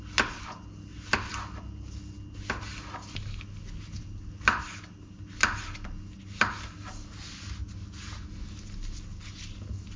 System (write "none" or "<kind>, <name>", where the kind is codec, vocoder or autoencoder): none